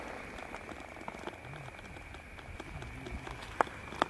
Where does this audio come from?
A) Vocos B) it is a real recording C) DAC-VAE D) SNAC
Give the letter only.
B